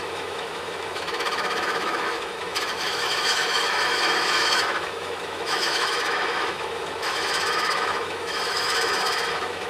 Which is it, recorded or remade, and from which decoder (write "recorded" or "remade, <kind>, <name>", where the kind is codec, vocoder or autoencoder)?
remade, autoencoder, DAC-VAE